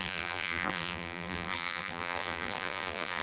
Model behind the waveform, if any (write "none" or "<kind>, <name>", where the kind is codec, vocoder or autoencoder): vocoder, BigVGAN v2